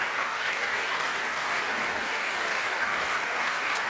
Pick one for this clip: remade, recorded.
remade